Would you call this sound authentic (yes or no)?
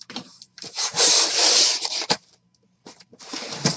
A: no